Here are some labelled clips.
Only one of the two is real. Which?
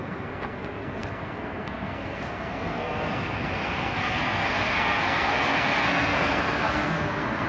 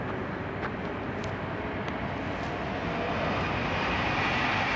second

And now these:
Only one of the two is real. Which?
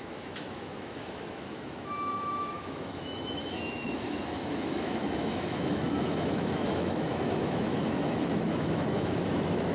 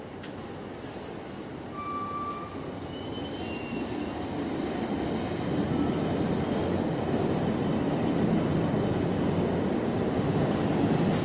second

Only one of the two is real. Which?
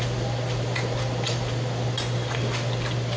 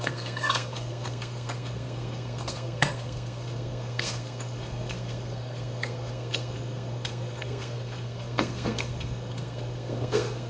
first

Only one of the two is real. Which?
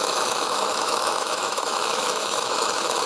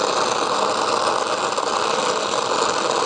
second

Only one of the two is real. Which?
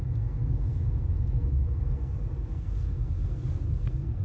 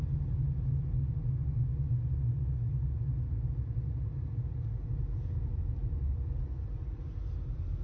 second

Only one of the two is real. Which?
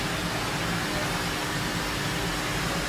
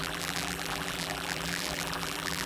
first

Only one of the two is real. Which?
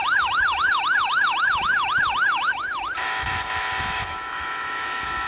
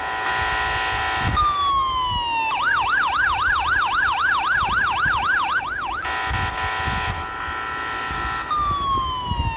second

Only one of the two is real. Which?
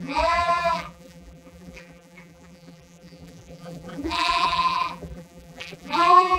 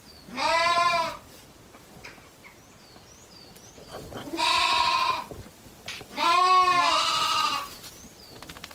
second